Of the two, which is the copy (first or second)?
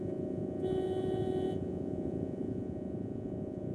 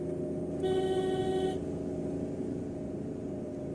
first